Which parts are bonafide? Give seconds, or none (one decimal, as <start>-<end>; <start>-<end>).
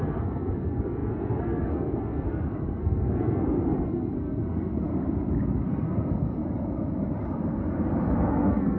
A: 4.9-5.7; 6.4-8.3